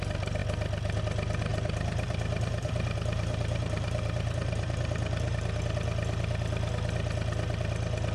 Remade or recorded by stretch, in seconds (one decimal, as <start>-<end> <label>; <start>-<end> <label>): 0.0-1.5 recorded; 1.5-5.6 remade; 5.6-8.1 recorded